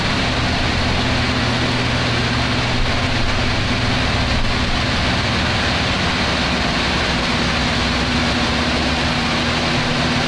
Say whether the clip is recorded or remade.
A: recorded